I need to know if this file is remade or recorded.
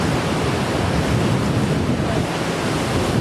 recorded